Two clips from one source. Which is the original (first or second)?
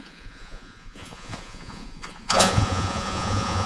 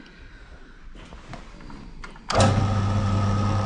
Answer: second